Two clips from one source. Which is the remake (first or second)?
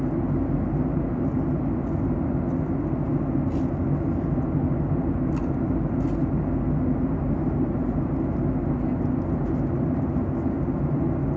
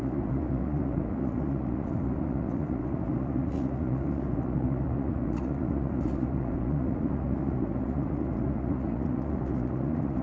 second